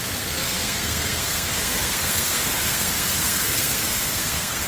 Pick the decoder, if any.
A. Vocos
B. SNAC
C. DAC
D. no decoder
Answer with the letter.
B